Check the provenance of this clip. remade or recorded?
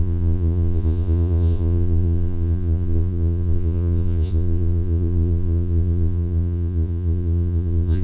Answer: remade